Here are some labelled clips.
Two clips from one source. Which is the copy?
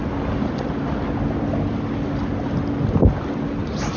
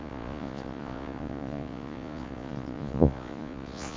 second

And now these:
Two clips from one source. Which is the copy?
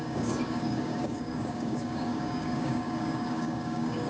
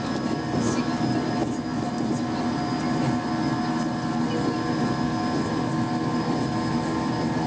first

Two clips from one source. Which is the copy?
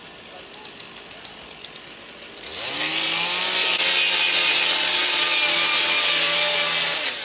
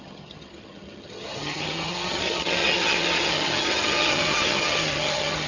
second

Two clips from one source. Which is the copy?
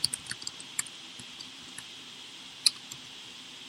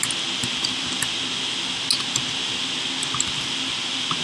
first